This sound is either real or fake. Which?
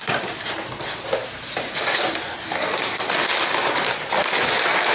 real